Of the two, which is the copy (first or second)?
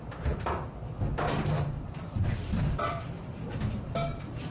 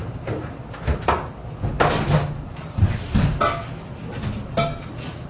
first